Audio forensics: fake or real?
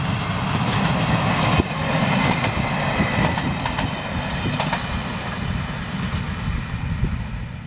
real